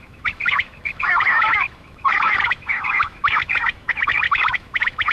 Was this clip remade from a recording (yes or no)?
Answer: yes